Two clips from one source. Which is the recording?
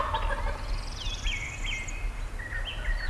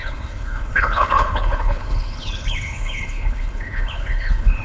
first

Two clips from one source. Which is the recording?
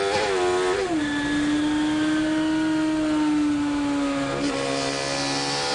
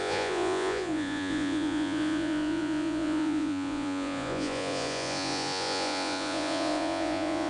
first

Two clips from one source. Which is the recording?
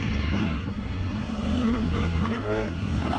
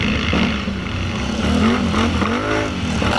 second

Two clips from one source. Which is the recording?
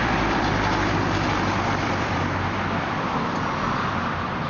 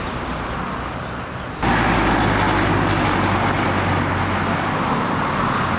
second